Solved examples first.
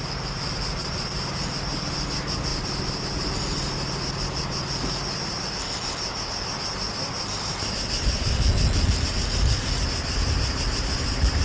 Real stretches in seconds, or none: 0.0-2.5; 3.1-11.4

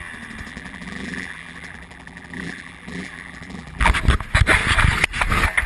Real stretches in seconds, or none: 0.0-0.5; 3.9-5.7